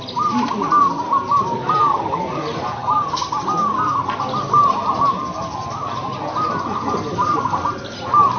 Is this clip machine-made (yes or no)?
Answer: no